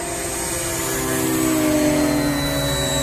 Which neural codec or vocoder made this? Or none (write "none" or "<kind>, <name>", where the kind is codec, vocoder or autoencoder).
none